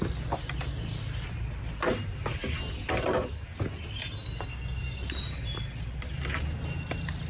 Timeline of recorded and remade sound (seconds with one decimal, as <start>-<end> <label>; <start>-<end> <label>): 0.0-4.5 recorded; 4.5-5.0 remade; 5.0-7.3 recorded